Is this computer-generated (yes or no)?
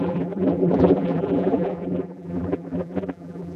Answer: yes